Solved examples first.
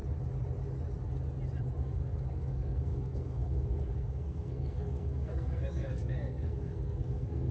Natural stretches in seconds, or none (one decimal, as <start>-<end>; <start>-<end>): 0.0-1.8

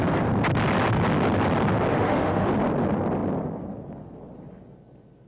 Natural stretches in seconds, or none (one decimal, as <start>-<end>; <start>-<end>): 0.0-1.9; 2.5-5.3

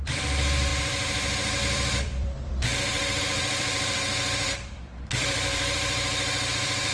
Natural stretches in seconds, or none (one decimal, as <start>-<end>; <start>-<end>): none